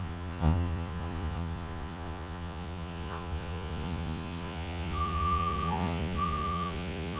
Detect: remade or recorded remade